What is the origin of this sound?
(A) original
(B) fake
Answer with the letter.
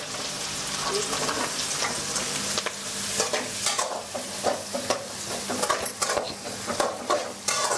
A